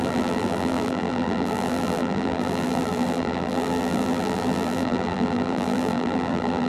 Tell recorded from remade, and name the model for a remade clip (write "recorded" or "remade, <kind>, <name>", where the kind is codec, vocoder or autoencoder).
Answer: remade, vocoder, BigVGAN v2